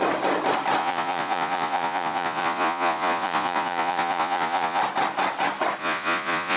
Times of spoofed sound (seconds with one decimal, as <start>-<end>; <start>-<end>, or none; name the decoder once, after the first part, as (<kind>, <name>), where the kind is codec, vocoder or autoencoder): 0.8-4.8 (vocoder, Vocos); 5.8-6.6